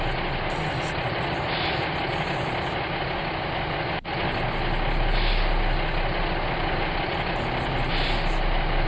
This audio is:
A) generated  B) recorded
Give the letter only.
B